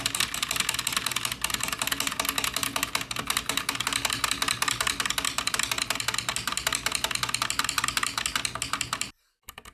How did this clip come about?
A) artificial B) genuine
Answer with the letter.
B